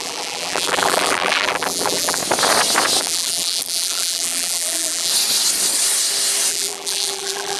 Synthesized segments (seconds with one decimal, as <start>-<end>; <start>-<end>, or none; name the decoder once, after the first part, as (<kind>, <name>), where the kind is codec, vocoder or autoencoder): 0.0-2.2 (vocoder, BigVGAN v2); 3.0-5.1; 6.5-7.6